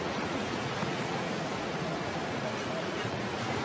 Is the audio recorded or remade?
remade